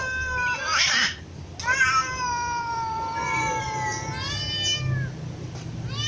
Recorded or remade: recorded